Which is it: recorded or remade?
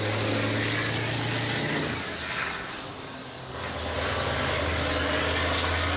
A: recorded